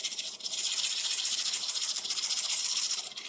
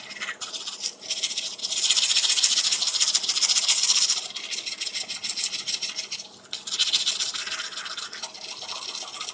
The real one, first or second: second